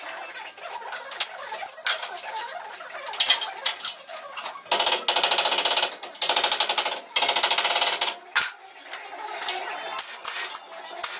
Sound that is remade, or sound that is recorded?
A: recorded